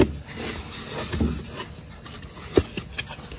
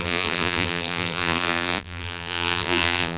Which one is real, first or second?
first